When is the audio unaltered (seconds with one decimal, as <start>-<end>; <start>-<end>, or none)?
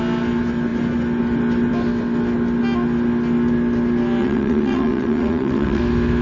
0.0-4.2; 5.8-6.2